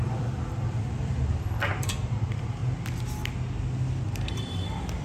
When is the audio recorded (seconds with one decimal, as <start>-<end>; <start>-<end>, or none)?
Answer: 2.6-4.3

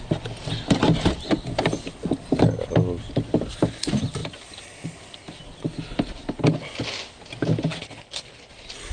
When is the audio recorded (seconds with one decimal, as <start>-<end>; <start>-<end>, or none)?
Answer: 0.0-7.8; 8.5-8.9

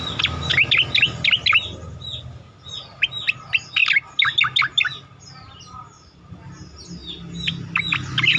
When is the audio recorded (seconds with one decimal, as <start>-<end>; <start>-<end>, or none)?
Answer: 0.0-8.4

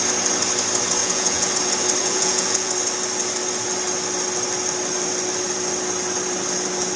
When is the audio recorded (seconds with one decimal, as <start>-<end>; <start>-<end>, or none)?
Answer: 0.0-1.0; 1.5-2.0; 2.7-7.0

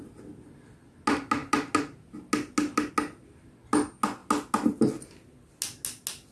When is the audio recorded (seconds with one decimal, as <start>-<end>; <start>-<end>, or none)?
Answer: 0.0-6.3

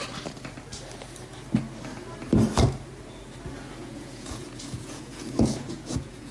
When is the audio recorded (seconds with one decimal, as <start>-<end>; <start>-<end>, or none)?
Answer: 0.0-3.8

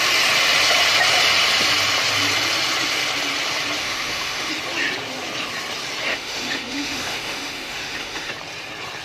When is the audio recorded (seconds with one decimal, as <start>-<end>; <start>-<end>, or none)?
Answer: 0.0-3.8; 4.5-6.1; 8.3-9.0